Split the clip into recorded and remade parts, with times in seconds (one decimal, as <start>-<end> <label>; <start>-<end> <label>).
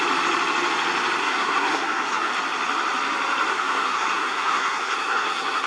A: 0.0-1.2 recorded; 1.2-2.3 remade; 2.3-3.5 recorded; 3.5-5.7 remade